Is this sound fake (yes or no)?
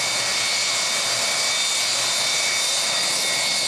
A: no